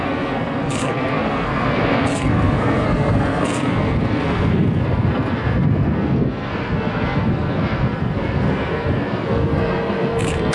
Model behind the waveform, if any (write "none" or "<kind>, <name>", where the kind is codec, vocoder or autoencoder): codec, SNAC